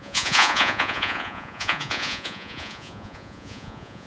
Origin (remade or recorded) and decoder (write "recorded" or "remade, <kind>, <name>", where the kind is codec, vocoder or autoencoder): remade, vocoder, Vocos